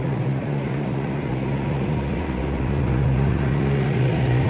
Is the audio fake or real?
fake